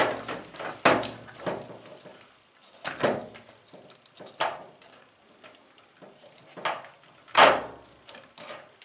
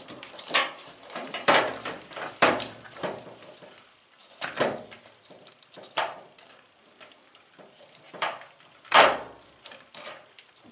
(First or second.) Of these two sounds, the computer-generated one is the second